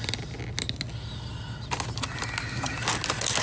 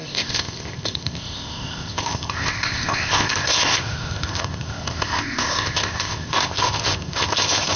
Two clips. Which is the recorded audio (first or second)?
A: first